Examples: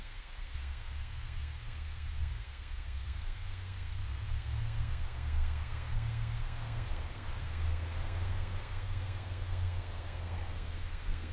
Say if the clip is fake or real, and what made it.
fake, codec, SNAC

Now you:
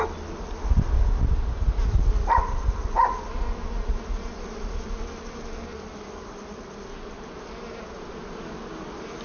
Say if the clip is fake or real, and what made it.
real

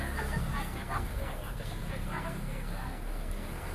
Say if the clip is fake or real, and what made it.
fake, codec, SNAC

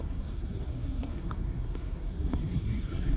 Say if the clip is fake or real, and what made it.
fake, codec, SNAC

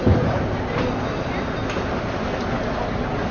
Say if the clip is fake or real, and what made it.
real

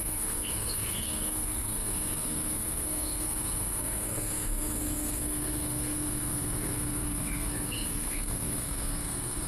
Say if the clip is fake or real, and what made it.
fake, codec, SNAC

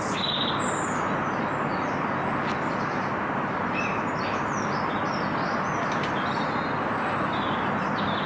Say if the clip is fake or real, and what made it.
real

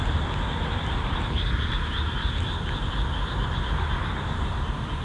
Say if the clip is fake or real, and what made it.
fake, vocoder, BigVGAN v2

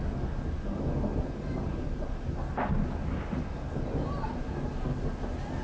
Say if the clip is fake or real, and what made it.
real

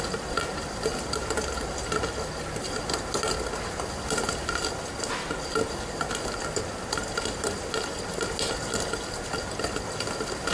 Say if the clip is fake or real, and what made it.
real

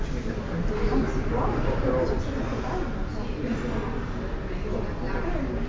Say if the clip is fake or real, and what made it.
real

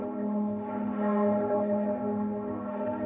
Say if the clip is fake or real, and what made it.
fake, autoencoder, DAC-VAE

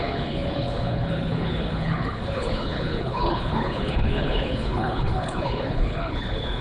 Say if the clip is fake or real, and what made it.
fake, codec, HILCodec